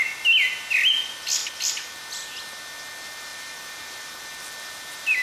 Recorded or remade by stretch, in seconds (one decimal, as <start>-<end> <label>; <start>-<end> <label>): 0.0-1.4 recorded; 1.4-2.0 remade; 2.0-3.3 recorded; 3.3-4.1 remade; 4.1-5.2 recorded